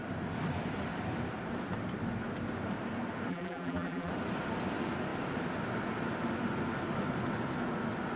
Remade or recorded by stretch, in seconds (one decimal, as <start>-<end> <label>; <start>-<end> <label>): 0.0-3.3 recorded; 3.3-4.1 remade; 4.1-8.2 recorded